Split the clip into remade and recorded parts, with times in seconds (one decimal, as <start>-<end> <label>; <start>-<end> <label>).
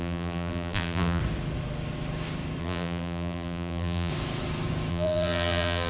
0.0-1.2 remade; 1.2-2.6 recorded; 2.6-4.1 remade; 4.1-4.9 recorded; 4.9-5.9 remade